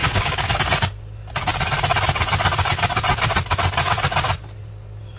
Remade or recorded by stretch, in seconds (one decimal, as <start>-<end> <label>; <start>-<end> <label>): 0.0-0.6 remade; 0.6-5.2 recorded